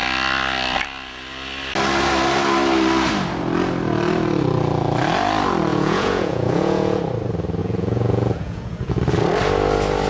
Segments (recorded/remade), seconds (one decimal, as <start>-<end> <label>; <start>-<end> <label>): 0.0-5.7 recorded; 5.7-7.0 remade; 7.0-7.6 recorded; 7.6-9.0 remade; 9.0-10.1 recorded